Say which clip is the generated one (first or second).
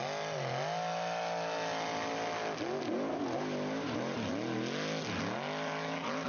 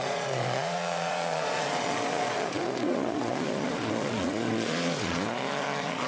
second